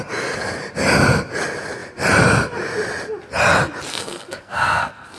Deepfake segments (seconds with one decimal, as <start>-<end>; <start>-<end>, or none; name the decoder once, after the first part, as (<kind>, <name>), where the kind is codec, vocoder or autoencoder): 3.9-5.2 (codec, SNAC)